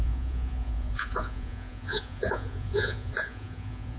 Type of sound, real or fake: fake